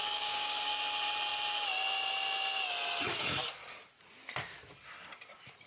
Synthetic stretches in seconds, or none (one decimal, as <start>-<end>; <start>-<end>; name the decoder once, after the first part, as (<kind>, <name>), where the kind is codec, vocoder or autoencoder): 0.0-0.7 (codec, DAC)